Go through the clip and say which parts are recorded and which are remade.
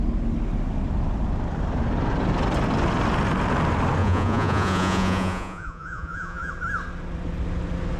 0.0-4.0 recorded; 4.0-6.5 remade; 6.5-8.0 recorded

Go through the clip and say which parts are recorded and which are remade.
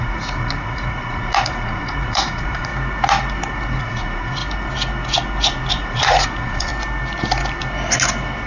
0.0-2.7 remade; 2.7-3.8 recorded; 3.8-4.4 remade; 4.4-5.7 recorded; 5.7-6.7 remade; 6.7-8.5 recorded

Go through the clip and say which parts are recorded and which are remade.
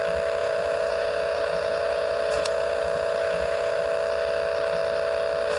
0.0-0.4 recorded; 0.4-3.8 remade; 3.8-5.6 recorded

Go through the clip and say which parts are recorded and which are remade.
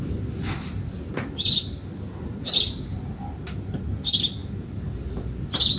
0.0-5.8 recorded